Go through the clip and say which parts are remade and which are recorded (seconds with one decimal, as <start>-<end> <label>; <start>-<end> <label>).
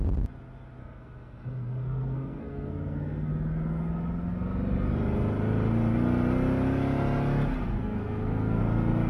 0.0-0.8 recorded; 0.8-3.3 remade; 3.3-7.8 recorded; 7.8-8.6 remade; 8.6-9.1 recorded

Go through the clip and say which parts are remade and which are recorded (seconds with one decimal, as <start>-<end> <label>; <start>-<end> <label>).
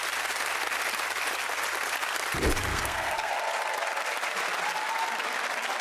0.0-2.7 recorded; 2.7-3.3 remade; 3.3-5.8 recorded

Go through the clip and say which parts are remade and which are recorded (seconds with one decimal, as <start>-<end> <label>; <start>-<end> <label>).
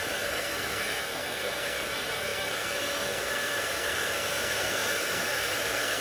0.0-6.0 remade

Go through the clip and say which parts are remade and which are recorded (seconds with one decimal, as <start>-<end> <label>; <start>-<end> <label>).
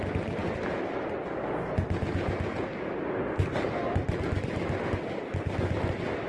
0.0-6.3 recorded